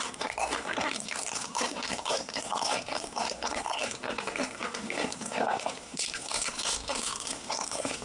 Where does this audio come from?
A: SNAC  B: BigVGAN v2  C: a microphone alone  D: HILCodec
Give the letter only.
A